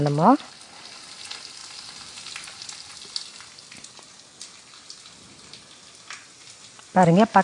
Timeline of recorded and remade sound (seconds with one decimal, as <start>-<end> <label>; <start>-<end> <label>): 0.0-1.6 recorded; 1.6-6.0 remade; 6.0-7.4 recorded